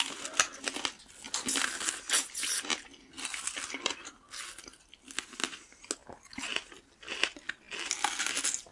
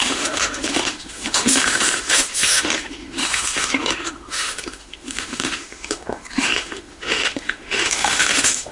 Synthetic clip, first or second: second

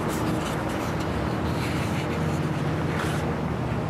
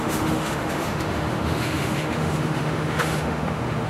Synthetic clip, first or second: second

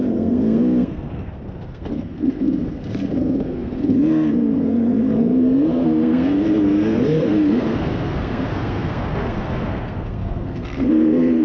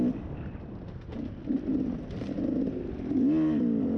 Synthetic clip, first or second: first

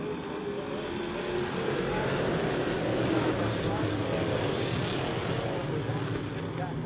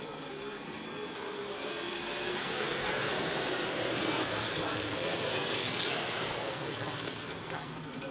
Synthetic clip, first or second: second